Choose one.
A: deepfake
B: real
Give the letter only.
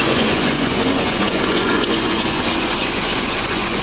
A